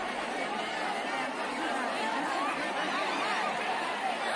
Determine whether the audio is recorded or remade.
recorded